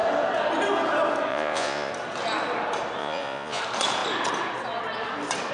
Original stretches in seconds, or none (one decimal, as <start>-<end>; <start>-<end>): 0.0-1.3; 1.9-3.0; 3.6-5.5